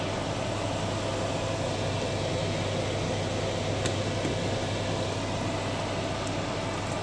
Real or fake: real